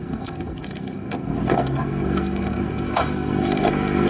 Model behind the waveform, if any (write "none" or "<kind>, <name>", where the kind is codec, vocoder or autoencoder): codec, SNAC